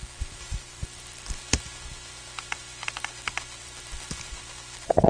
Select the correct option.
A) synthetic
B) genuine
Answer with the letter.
A